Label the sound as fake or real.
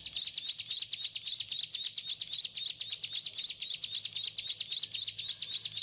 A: real